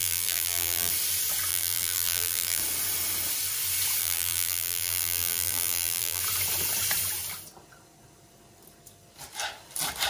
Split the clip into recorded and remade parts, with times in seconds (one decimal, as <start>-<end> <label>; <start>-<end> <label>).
0.0-0.9 remade; 0.9-1.5 recorded; 1.5-2.6 remade; 2.6-4.0 recorded; 4.0-6.2 remade; 6.2-10.1 recorded